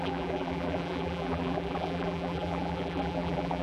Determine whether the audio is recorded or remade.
remade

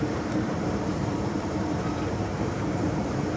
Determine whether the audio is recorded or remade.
remade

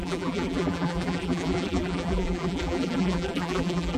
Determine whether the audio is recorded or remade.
remade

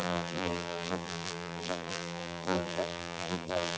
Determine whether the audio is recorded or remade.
remade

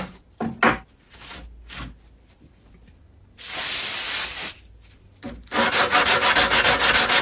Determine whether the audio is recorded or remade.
recorded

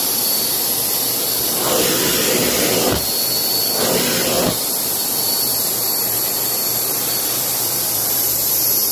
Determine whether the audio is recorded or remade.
remade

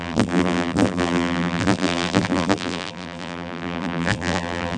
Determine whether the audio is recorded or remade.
remade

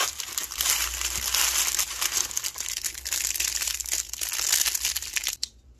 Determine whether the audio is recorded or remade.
recorded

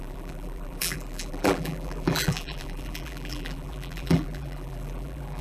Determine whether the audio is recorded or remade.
remade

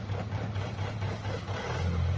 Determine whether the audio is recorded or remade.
remade